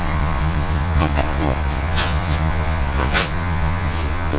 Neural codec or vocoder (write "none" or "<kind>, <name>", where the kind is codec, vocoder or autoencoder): vocoder, Vocos